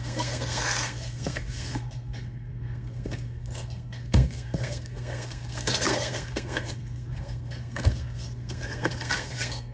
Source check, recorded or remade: remade